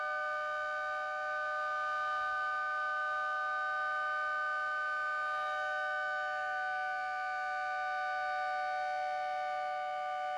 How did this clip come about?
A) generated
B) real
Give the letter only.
B